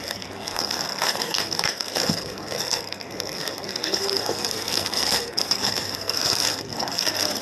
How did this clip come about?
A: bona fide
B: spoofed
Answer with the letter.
B